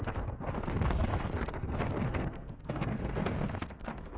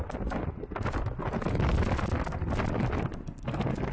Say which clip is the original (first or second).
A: second